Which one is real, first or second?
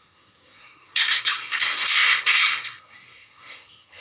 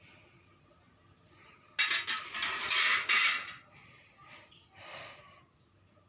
second